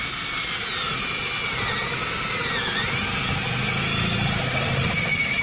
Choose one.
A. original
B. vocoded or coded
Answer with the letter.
A